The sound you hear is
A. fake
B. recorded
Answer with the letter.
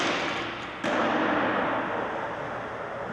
B